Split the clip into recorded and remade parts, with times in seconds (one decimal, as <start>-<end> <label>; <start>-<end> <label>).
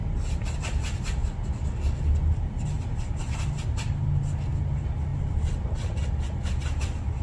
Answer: 0.0-7.2 recorded